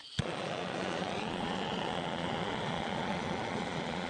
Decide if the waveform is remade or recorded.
remade